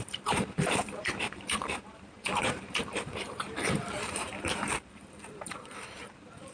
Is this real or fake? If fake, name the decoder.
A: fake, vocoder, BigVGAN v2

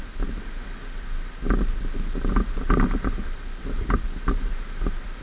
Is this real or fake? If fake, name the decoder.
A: real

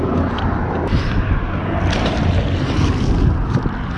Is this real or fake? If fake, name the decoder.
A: real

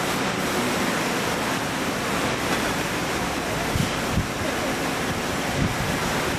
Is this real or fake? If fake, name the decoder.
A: fake, vocoder, BigVGAN v2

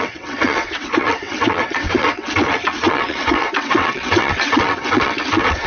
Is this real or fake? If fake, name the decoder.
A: fake, vocoder, WaveNeXt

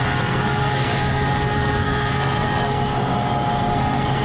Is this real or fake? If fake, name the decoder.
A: fake, codec, SNAC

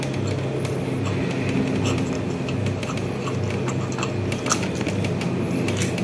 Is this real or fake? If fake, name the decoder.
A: real